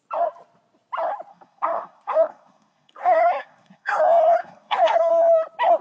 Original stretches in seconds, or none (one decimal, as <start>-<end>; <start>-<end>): 0.0-1.3; 4.0-4.4; 5.1-5.8